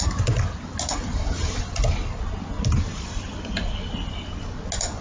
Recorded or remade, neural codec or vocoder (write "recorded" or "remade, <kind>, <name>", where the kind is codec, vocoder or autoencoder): recorded